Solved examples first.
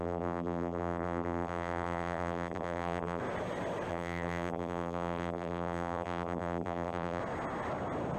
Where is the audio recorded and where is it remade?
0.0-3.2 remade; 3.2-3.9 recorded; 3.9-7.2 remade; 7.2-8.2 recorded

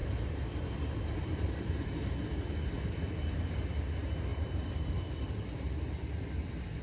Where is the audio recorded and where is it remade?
0.0-2.1 remade; 2.1-4.3 recorded; 4.3-4.9 remade; 4.9-6.8 recorded

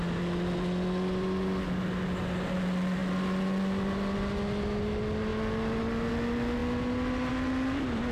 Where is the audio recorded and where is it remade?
0.0-8.1 recorded

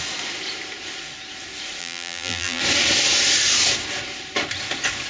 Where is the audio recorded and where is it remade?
0.0-1.8 recorded; 1.8-2.6 remade; 2.6-5.1 recorded

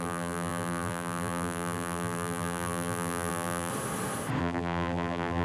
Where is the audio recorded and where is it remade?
0.0-3.7 remade; 3.7-4.4 recorded; 4.4-5.4 remade

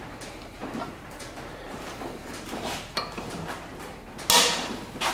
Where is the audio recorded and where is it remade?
0.0-0.6 recorded; 0.6-3.3 remade; 3.3-5.1 recorded

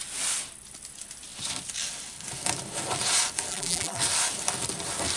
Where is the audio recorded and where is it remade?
0.0-3.5 recorded; 3.5-4.0 remade; 4.0-5.2 recorded

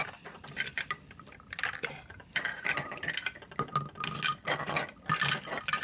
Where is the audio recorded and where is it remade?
0.0-3.5 remade; 3.5-5.8 recorded